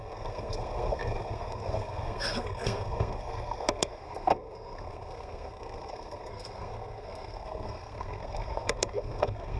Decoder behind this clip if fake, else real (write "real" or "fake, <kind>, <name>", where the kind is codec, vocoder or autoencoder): fake, codec, SNAC